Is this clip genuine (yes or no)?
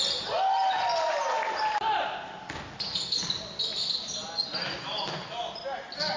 yes